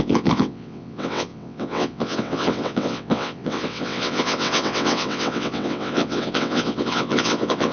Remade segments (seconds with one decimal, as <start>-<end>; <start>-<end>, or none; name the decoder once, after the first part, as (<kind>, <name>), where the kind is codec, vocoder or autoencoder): 0.0-7.7 (vocoder, WaveNeXt)